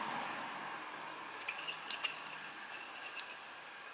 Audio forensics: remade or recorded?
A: recorded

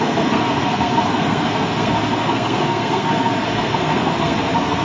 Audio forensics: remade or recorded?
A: remade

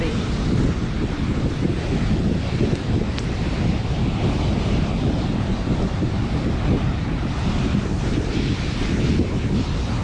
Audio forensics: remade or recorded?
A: recorded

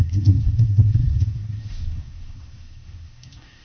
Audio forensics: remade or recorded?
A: remade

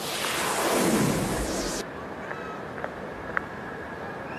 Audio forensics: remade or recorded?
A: recorded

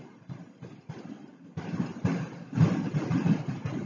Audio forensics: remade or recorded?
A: recorded